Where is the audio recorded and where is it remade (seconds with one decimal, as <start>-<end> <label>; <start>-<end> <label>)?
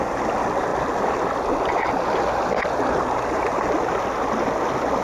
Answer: 0.0-5.0 recorded